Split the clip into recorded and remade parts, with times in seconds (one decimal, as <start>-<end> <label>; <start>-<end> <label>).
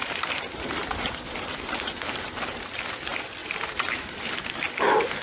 0.0-2.3 remade; 2.3-3.4 recorded; 3.4-4.3 remade; 4.3-5.2 recorded